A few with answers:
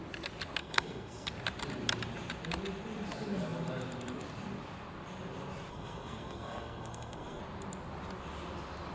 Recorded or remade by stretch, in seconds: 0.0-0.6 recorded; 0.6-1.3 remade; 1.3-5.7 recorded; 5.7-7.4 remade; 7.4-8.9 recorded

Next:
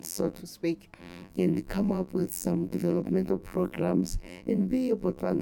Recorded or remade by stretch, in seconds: 0.0-0.4 remade; 0.4-1.0 recorded; 1.0-5.4 remade

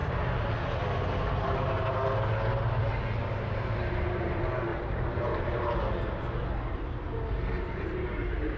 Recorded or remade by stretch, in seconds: 0.0-4.7 recorded; 4.7-5.7 remade; 5.7-8.6 recorded

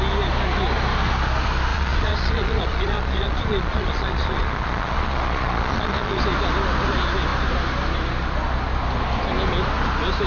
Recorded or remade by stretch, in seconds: 0.0-1.7 recorded; 1.7-6.2 remade; 6.2-10.3 recorded

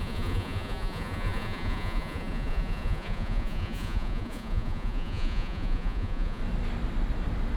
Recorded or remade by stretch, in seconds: 0.0-6.4 remade; 6.4-7.6 recorded

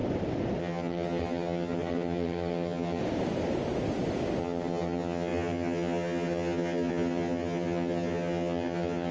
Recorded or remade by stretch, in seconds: 0.0-0.6 recorded; 0.6-3.0 remade; 3.0-4.4 recorded; 4.4-9.1 remade

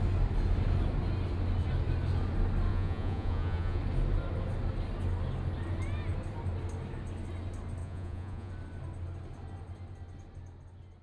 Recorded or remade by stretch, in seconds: 0.0-2.7 recorded; 2.7-3.8 remade; 3.8-7.8 recorded; 7.8-8.5 remade; 8.5-11.0 recorded

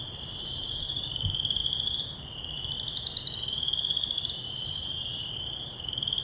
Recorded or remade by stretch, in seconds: 0.0-6.2 remade